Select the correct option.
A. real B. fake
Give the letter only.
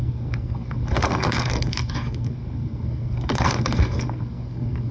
B